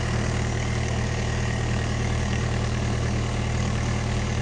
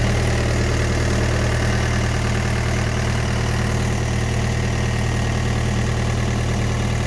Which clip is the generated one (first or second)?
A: first